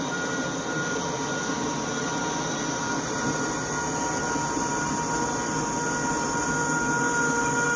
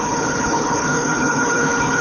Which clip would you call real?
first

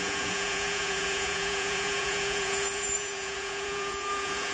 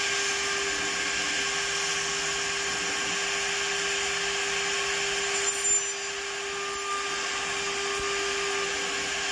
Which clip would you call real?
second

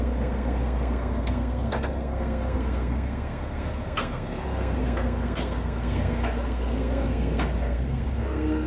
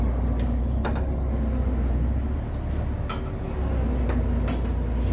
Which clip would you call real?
second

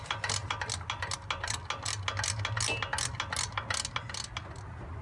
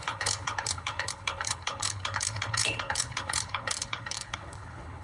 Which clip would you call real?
first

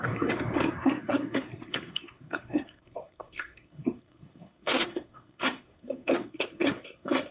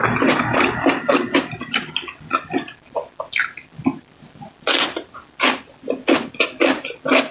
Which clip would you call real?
second